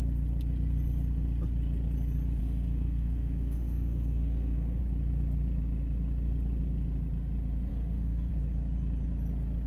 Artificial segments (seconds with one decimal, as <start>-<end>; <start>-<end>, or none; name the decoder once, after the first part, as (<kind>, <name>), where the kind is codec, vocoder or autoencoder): 2.4-4.8 (codec, SNAC); 7.7-8.3

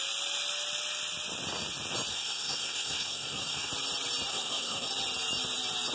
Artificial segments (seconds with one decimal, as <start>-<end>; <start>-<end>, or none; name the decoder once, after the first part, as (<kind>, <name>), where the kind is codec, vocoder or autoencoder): 2.1-3.7 (codec, SNAC); 4.3-4.9

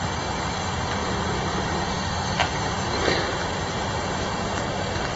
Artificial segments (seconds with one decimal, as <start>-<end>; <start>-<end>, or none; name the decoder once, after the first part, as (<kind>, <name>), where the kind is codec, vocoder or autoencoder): 1.0-3.5 (vocoder, BigVGAN v2)